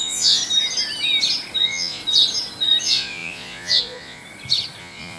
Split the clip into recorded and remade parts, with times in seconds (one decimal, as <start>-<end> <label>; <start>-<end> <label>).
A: 0.0-0.4 remade; 0.4-1.6 recorded; 1.6-2.0 remade; 2.0-2.8 recorded; 2.8-4.2 remade; 4.2-4.8 recorded; 4.8-5.2 remade